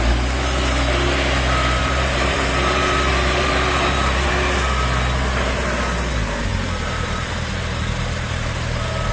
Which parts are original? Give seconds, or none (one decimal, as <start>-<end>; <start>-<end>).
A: 0.0-1.8; 4.3-6.5